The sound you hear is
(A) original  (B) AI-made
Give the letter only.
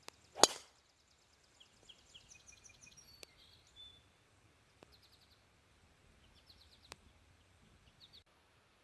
A